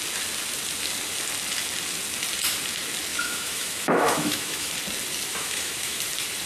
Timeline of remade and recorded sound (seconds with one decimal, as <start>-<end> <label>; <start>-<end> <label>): 0.0-3.1 recorded; 3.1-4.7 remade; 4.7-5.3 recorded; 5.3-6.0 remade; 6.0-6.5 recorded